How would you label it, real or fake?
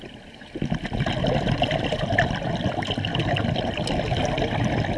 real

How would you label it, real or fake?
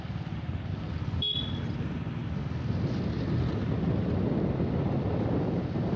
real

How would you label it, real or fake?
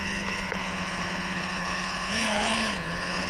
fake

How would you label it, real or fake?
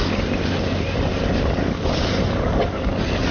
real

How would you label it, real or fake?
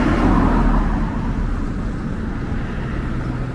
real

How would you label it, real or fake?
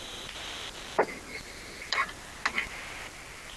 real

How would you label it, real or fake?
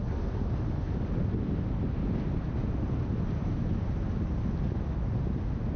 real